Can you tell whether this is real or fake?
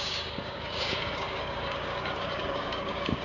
fake